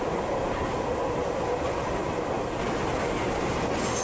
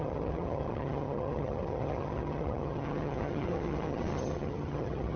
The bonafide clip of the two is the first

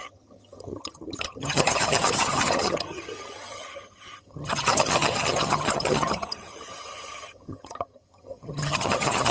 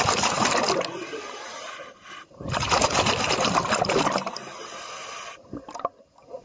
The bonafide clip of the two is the second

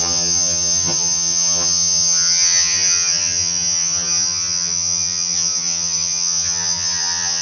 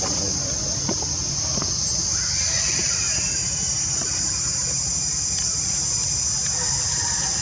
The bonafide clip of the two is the second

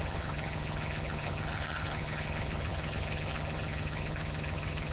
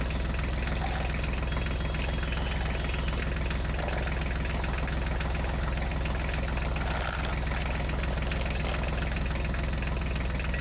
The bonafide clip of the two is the second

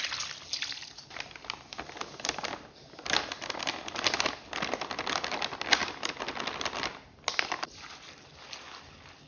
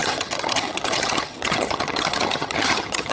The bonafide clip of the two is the first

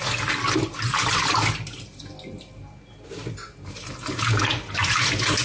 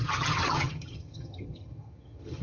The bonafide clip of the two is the first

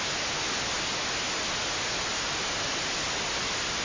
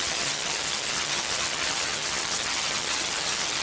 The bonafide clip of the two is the first